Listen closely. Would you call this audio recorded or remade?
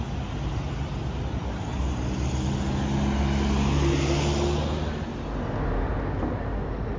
recorded